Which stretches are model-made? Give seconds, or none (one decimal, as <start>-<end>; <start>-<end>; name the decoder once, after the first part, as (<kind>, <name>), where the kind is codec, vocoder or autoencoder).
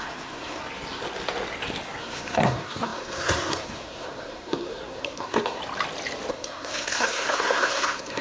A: 0.0-0.6 (codec, SNAC); 2.0-5.6; 6.3-8.2